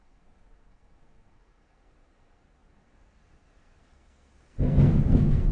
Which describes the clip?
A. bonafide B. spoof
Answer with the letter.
B